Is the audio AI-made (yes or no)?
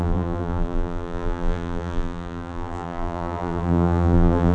yes